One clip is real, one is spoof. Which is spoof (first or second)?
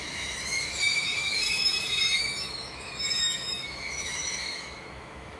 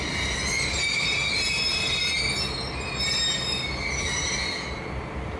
first